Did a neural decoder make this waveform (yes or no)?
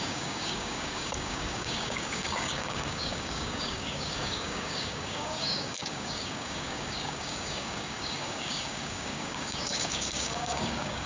yes